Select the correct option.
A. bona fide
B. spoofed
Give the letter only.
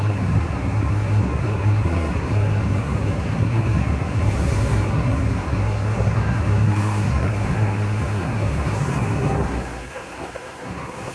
B